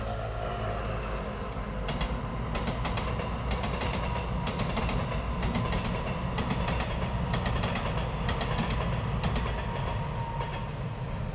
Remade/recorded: recorded